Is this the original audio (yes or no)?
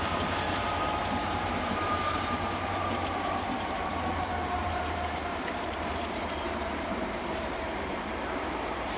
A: no